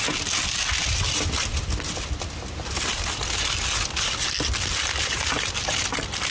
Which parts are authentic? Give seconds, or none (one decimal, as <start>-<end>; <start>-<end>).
0.0-6.3